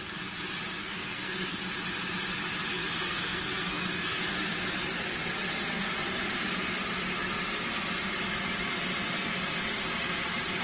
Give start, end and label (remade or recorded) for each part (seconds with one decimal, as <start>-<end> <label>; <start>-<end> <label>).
0.0-0.8 recorded; 0.8-1.6 remade; 1.6-2.8 recorded; 2.8-4.2 remade; 4.2-10.6 recorded